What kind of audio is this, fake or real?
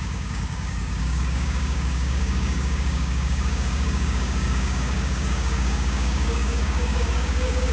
fake